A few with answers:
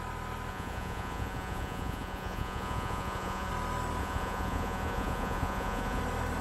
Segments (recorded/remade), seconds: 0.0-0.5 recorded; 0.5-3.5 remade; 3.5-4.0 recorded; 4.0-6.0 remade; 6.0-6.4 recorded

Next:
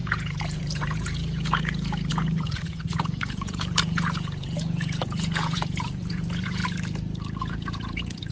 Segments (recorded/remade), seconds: 0.0-6.6 remade; 6.6-7.4 recorded; 7.4-8.3 remade

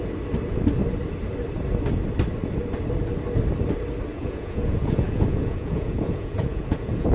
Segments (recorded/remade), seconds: 0.0-4.1 recorded; 4.1-7.1 remade